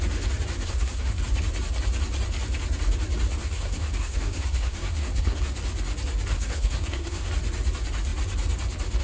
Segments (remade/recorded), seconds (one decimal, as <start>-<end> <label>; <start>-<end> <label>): 0.0-0.5 recorded; 0.5-1.2 remade; 1.2-3.4 recorded; 3.4-5.4 remade; 5.4-6.3 recorded; 6.3-7.3 remade; 7.3-9.0 recorded